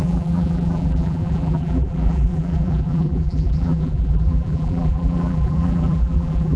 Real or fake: fake